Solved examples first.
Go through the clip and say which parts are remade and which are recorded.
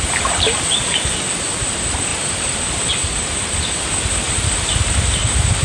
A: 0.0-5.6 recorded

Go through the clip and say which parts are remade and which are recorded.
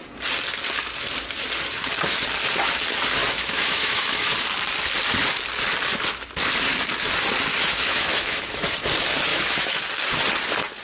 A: 0.0-3.2 recorded; 3.2-4.3 remade; 4.3-7.5 recorded; 7.5-8.7 remade; 8.7-9.3 recorded; 9.3-9.8 remade; 9.8-10.8 recorded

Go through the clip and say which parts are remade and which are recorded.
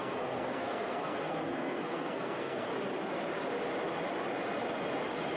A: 0.0-2.7 remade; 2.7-5.4 recorded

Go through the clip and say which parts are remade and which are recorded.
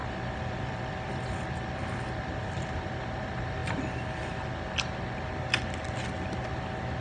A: 0.0-2.7 remade; 2.7-7.0 recorded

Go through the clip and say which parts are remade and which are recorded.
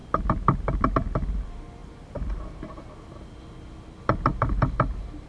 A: 0.0-1.8 recorded; 1.8-2.8 remade; 2.8-4.3 recorded; 4.3-5.3 remade